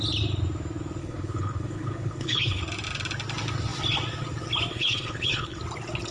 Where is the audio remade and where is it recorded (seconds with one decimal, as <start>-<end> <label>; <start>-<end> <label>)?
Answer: 0.0-1.0 recorded; 1.0-2.6 remade; 2.6-4.7 recorded; 4.7-5.6 remade; 5.6-6.1 recorded